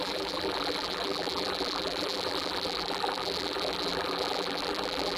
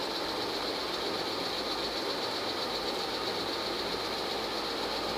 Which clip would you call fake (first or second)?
first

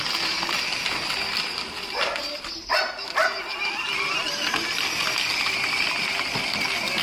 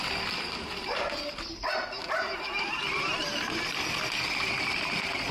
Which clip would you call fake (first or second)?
second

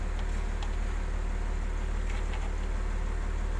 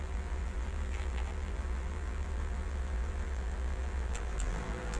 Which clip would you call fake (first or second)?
second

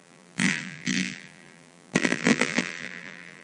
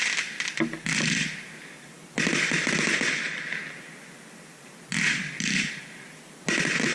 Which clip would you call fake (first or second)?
first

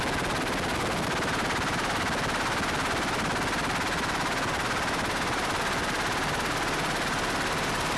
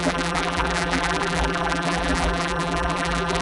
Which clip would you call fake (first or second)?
second